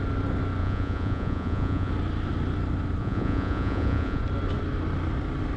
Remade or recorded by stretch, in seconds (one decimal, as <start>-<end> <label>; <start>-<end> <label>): 0.0-0.6 recorded; 0.6-1.9 remade; 1.9-3.0 recorded; 3.0-4.2 remade; 4.2-5.6 recorded